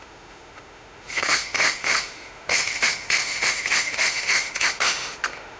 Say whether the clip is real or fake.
fake